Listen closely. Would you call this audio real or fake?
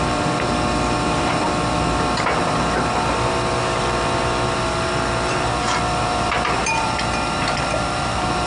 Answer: fake